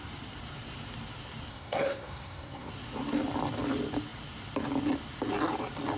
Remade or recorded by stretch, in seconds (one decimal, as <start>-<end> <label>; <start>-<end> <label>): 0.0-1.5 recorded; 1.5-2.7 remade; 2.7-6.0 recorded